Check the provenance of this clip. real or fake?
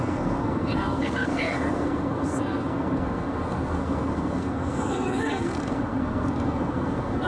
fake